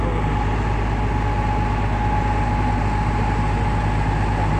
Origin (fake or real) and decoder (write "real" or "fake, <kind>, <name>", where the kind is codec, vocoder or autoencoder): real